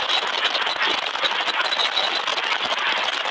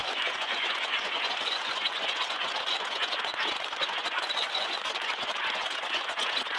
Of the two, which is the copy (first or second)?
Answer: second